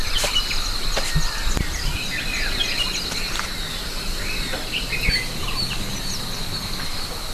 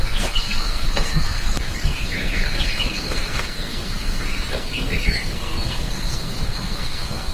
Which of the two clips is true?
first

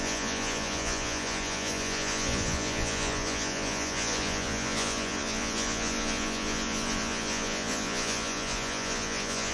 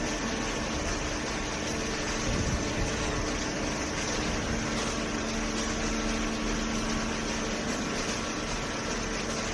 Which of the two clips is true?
second